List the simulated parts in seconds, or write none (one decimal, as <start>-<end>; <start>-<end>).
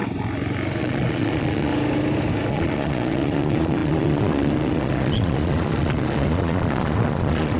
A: 0.8-1.7; 2.5-7.6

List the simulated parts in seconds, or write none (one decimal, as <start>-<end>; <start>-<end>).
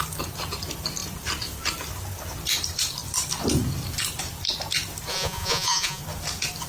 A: 5.1-6.0